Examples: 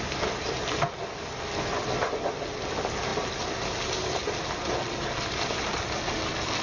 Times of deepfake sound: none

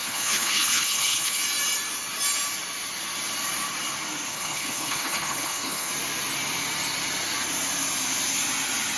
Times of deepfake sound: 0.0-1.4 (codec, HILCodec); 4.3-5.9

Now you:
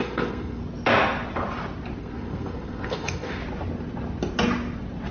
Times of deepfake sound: 0.0-0.6 (codec, SNAC); 2.0-3.4

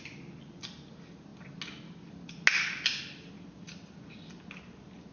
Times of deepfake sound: none

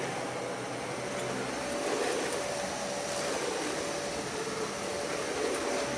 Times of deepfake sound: none

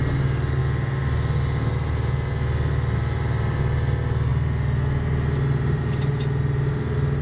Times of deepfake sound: none